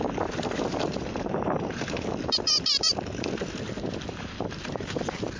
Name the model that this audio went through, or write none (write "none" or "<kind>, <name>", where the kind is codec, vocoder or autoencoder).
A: vocoder, BigVGAN v2